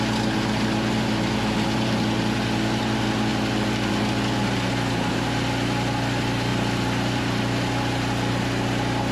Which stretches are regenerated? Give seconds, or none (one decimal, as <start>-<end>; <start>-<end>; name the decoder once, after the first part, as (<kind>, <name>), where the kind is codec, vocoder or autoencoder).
none